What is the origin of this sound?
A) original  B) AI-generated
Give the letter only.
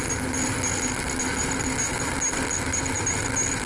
A